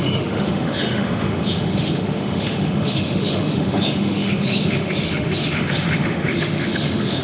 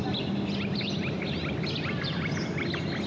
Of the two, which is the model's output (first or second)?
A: first